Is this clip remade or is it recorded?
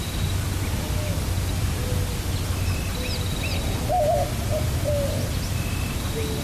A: recorded